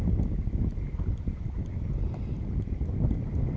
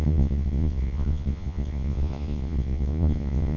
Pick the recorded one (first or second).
first